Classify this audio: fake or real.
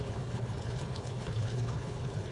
fake